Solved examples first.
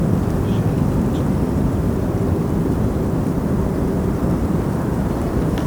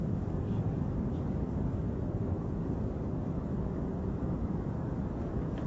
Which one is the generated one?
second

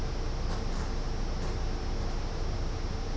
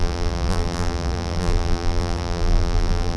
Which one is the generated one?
second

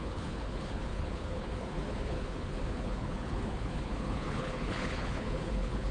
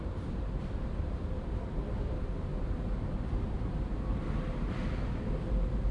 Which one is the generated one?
first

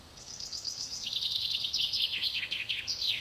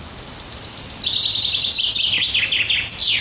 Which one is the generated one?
first